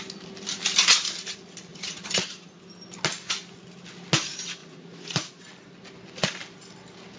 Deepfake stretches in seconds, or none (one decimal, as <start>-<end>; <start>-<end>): 1.7-2.6; 4.6-5.4